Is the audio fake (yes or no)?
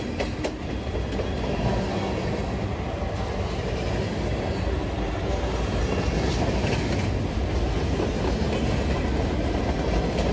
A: no